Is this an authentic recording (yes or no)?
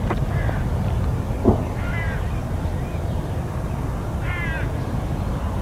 yes